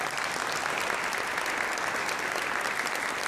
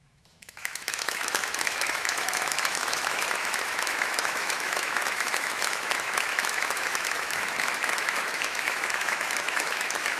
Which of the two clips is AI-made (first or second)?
second